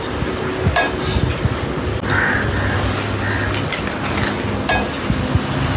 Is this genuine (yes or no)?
yes